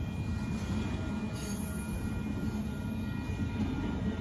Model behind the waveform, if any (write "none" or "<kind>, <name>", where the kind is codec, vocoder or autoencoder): none